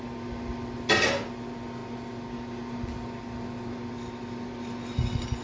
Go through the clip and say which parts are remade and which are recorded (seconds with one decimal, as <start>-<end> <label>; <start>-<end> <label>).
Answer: 0.0-5.4 recorded